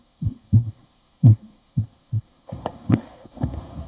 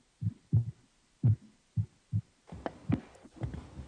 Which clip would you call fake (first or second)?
first